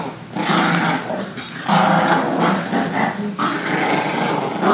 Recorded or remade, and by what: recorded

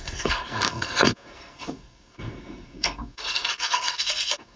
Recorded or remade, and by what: remade, codec, SNAC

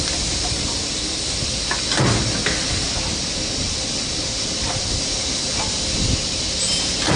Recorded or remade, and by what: recorded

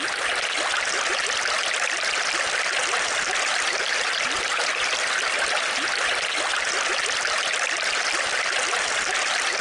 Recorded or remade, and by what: recorded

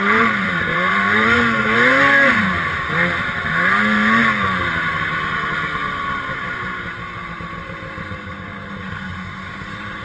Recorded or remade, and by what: remade, vocoder, BigVGAN v2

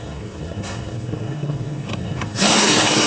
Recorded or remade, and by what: remade, codec, SNAC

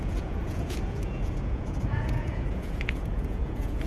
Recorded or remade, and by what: remade, vocoder, Vocos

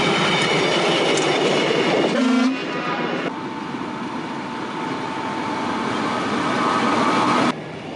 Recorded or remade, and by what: recorded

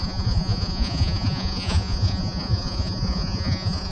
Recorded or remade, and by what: remade, vocoder, Vocos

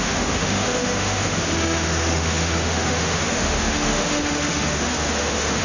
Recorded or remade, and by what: remade, autoencoder, DAC-VAE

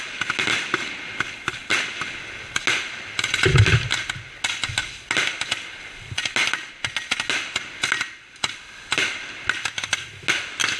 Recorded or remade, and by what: recorded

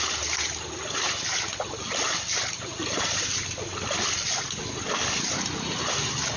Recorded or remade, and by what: recorded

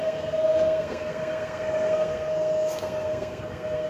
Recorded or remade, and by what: remade, codec, SNAC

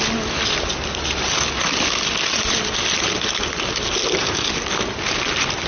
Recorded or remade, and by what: recorded